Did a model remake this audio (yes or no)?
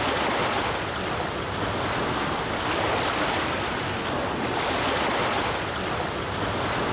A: no